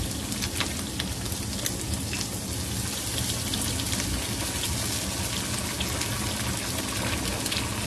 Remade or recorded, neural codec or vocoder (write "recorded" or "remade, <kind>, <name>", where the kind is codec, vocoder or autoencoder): recorded